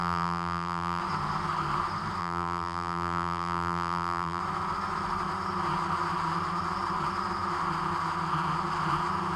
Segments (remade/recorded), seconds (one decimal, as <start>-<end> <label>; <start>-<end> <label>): 0.0-1.0 remade; 1.0-2.2 recorded; 2.2-4.4 remade; 4.4-9.4 recorded